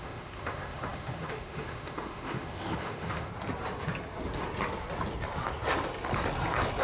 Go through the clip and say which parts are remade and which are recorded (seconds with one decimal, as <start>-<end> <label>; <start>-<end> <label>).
0.0-3.3 remade; 3.3-6.8 recorded